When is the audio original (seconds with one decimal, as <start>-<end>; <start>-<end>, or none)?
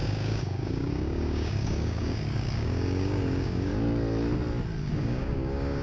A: 3.7-4.8